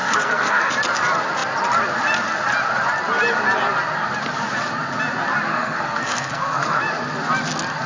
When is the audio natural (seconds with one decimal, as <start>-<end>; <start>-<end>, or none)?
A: 0.7-5.5; 6.8-7.9